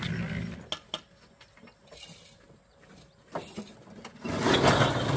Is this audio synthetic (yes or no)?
no